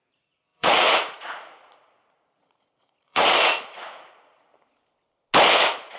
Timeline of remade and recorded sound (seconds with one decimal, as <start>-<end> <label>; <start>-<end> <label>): 0.0-4.5 remade; 4.5-5.5 recorded; 5.5-6.0 remade